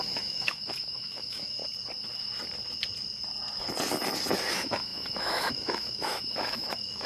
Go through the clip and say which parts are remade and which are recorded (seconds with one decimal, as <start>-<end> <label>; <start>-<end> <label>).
0.0-1.6 remade; 1.6-4.5 recorded; 4.5-7.1 remade